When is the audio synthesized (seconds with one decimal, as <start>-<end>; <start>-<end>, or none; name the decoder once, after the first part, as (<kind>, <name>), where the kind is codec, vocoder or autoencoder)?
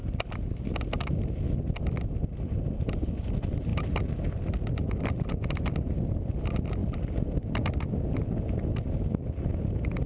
none